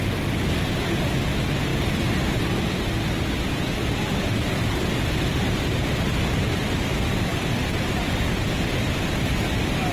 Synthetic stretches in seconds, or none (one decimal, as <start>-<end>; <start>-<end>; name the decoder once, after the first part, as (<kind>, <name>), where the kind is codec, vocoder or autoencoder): 0.0-1.7 (vocoder, BigVGAN v2); 3.8-9.9